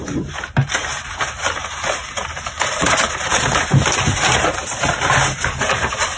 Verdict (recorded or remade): remade